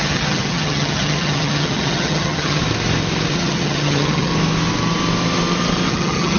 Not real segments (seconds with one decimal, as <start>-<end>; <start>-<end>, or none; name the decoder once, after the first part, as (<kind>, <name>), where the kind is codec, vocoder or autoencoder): 0.0-2.6 (vocoder, HiFi-GAN); 3.3-4.3; 5.9-6.4